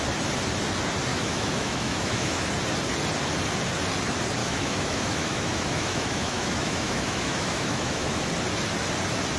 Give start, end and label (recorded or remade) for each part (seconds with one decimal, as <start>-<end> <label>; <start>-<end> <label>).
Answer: 0.0-1.1 recorded; 1.1-2.5 remade; 2.5-4.4 recorded; 4.4-8.3 remade; 8.3-9.4 recorded